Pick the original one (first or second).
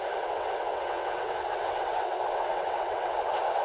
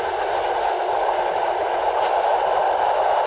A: second